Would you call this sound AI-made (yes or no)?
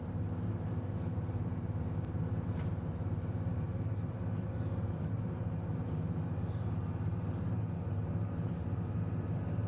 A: yes